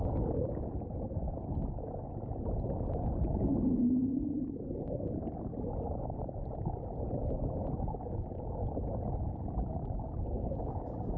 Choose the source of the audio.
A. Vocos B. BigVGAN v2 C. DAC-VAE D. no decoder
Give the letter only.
D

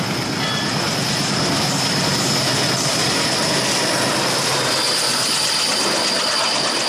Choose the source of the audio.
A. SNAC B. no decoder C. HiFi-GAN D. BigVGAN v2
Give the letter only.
B